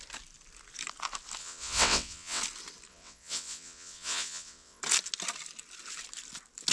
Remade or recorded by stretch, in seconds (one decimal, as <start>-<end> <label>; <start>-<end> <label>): 0.0-1.4 recorded; 1.4-2.4 remade; 2.4-2.9 recorded; 2.9-4.8 remade; 4.8-6.7 recorded

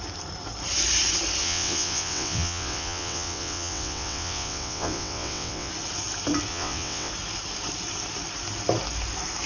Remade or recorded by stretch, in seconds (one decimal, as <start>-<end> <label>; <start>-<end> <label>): 0.0-1.4 recorded; 1.4-5.7 remade; 5.7-6.5 recorded; 6.5-7.1 remade; 7.1-9.5 recorded

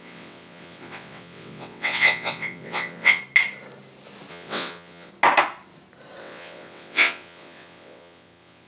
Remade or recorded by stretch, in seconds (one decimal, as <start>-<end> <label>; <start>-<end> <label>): 0.0-3.2 remade; 3.2-4.3 recorded; 4.3-5.1 remade; 5.1-6.2 recorded; 6.2-8.7 remade

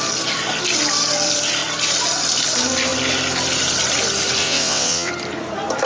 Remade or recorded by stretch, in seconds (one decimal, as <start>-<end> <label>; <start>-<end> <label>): 0.0-4.4 recorded; 4.4-5.1 remade; 5.1-5.9 recorded

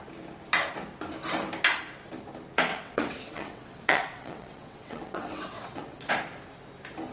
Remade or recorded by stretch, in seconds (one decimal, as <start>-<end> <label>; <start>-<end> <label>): 0.0-2.7 recorded; 2.7-6.1 remade; 6.1-7.1 recorded

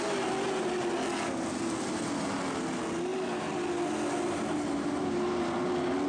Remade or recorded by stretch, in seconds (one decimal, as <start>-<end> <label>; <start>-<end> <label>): 0.0-6.1 recorded

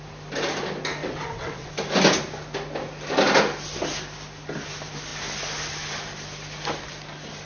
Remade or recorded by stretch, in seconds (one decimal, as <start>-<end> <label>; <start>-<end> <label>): 0.0-1.0 recorded; 1.0-1.7 remade; 1.7-7.5 recorded